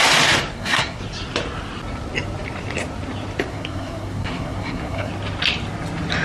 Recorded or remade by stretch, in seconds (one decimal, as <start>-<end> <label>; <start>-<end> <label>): 0.0-0.5 recorded; 0.5-1.0 remade; 1.0-3.5 recorded; 3.5-5.1 remade; 5.1-6.2 recorded